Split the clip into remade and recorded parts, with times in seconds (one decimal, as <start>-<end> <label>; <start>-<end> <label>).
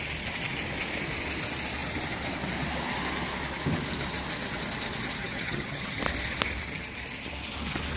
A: 0.0-5.2 recorded; 5.2-6.0 remade; 6.0-8.0 recorded